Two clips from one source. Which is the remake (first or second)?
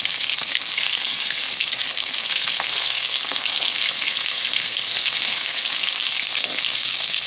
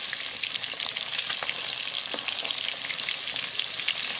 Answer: first